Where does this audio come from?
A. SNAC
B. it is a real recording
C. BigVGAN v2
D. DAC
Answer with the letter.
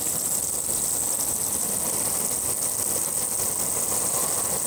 B